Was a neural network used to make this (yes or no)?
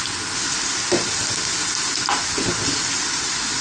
no